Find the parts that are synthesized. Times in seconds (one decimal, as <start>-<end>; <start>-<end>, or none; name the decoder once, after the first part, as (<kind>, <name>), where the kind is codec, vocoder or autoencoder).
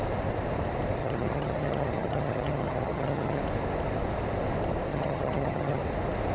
1.0-3.4 (vocoder, HiFi-GAN); 4.9-5.8